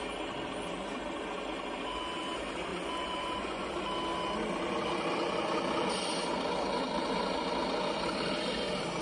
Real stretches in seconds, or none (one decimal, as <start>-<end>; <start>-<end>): 0.0-2.7; 3.7-9.0